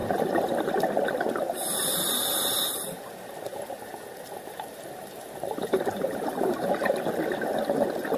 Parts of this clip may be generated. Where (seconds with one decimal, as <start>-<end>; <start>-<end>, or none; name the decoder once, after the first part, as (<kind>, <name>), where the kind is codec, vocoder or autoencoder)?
0.0-0.7 (vocoder, BigVGAN v2); 2.3-3.0; 3.5-6.7